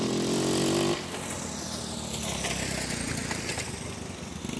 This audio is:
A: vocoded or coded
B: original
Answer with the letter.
B